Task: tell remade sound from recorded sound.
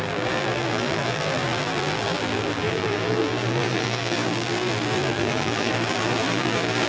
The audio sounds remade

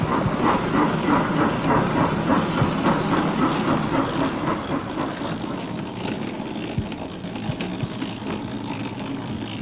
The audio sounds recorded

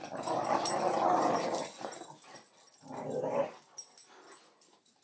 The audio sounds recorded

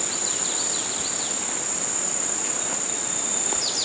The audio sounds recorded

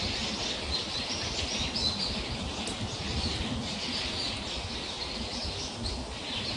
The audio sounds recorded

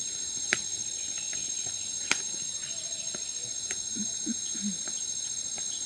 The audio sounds recorded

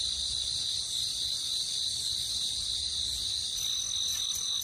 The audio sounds recorded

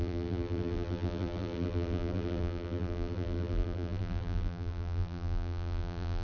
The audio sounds remade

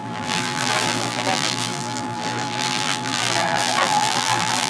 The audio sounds remade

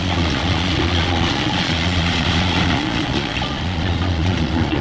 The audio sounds remade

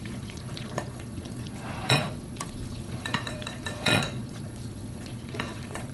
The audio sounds remade